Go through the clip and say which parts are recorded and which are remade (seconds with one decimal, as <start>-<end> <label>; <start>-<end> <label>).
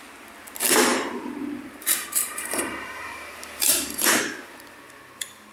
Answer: 0.0-0.9 recorded; 0.9-4.2 remade; 4.2-5.5 recorded